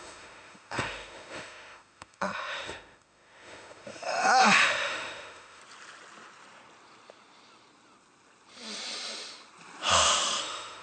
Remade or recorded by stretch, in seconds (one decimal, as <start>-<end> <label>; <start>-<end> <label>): 0.0-5.6 remade; 5.6-10.4 recorded; 10.4-10.8 remade